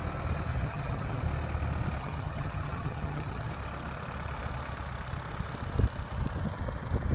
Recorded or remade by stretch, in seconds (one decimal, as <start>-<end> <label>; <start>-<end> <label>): 0.0-0.5 recorded; 0.5-1.2 remade; 1.2-2.0 recorded; 2.0-3.5 remade; 3.5-7.1 recorded